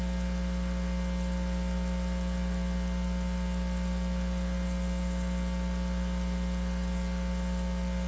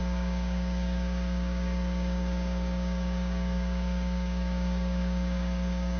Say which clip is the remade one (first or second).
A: second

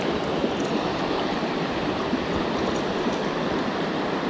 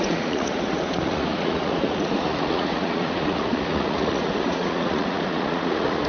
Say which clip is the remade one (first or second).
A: second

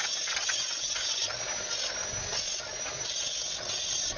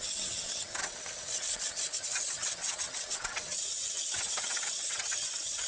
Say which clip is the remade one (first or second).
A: second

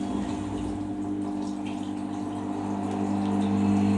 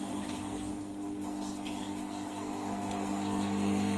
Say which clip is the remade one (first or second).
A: second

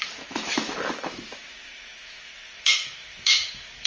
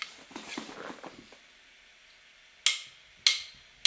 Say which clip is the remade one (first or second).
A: first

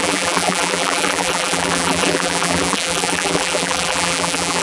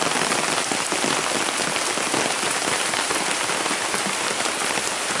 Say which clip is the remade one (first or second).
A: first